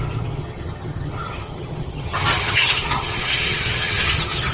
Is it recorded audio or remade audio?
remade